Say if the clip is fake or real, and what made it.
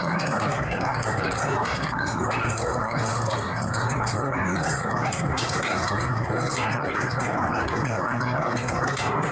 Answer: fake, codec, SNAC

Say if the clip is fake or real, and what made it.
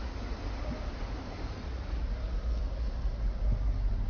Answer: real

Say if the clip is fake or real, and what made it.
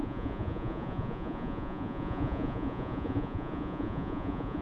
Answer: fake, vocoder, Vocos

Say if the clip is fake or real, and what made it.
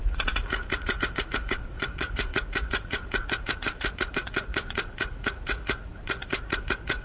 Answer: fake, vocoder, Vocos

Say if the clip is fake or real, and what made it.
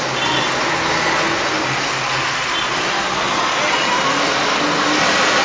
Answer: real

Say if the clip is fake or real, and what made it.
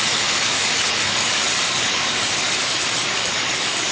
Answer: fake, codec, DAC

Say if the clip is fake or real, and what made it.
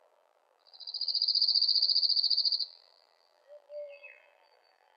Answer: fake, vocoder, BigVGAN v2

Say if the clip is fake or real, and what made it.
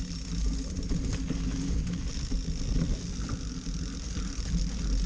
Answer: real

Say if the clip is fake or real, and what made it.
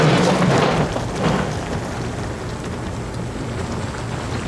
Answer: real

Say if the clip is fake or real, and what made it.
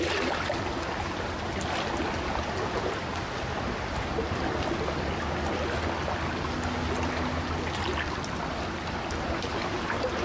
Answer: real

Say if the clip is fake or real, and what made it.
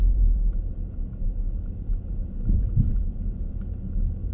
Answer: fake, vocoder, Vocos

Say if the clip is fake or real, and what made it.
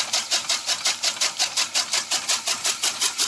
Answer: real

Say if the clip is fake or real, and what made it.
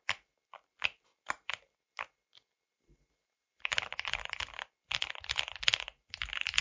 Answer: real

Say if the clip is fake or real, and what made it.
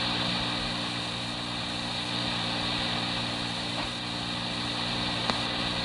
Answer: real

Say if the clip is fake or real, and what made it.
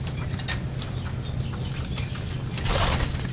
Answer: real